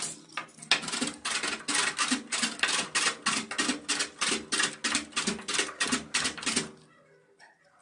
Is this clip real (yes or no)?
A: yes